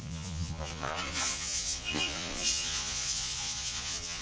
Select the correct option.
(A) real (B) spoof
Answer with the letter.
B